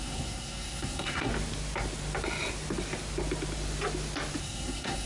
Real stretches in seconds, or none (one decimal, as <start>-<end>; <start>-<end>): 1.3-4.4